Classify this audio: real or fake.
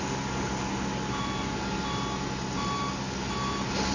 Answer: real